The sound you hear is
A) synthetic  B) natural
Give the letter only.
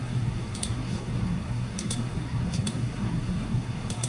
A